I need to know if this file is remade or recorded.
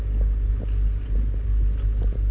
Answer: recorded